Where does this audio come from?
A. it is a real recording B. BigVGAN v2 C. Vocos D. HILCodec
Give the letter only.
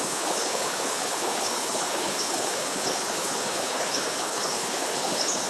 D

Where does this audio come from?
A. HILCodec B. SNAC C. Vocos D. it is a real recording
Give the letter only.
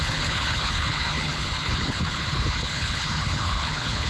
A